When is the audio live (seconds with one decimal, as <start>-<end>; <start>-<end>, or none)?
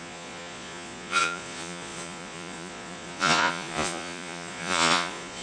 none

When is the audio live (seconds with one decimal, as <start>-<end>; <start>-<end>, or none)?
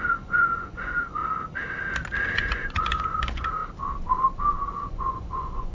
1.2-2.3; 3.6-4.7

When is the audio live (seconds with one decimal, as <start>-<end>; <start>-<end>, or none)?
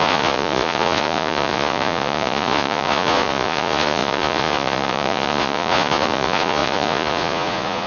none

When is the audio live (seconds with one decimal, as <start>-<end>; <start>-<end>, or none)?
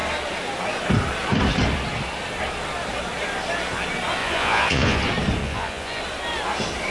0.0-4.2; 5.0-5.4; 6.0-6.9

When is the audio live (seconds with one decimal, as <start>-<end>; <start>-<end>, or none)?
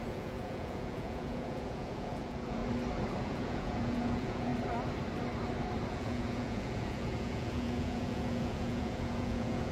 2.6-3.2; 4.5-5.9